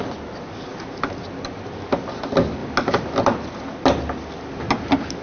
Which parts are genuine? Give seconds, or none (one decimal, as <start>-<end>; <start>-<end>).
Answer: 0.0-5.2